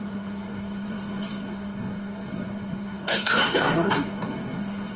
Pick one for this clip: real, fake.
fake